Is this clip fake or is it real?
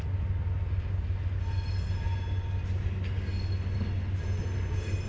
real